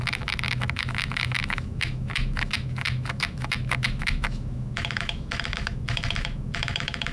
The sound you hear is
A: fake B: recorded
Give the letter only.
A